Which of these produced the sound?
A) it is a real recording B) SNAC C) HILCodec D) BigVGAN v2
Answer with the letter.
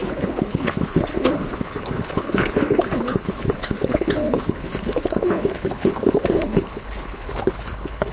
C